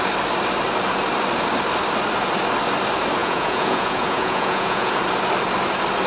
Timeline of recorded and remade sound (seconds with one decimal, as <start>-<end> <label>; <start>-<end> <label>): 0.0-3.2 recorded; 3.2-5.0 remade; 5.0-6.1 recorded